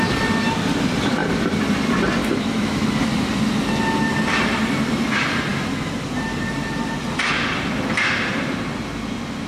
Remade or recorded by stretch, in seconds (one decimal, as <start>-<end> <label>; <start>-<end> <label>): 0.0-2.2 recorded; 2.2-3.0 remade; 3.0-9.5 recorded